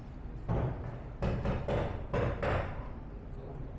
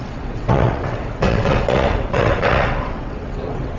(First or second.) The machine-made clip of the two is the second